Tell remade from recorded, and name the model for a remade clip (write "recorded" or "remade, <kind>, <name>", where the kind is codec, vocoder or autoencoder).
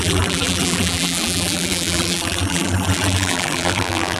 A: remade, vocoder, BigVGAN v2